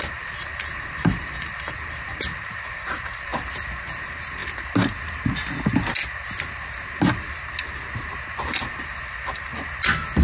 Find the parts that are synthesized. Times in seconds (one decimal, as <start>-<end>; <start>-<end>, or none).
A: 0.0-3.3; 3.8-4.4; 8.6-9.5